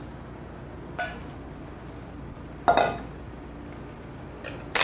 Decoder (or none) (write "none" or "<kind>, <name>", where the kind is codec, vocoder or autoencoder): none